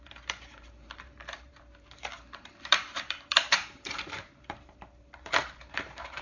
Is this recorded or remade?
remade